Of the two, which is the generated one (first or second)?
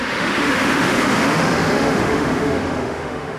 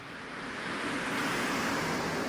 first